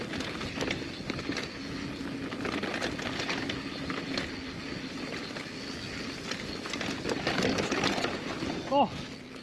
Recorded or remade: recorded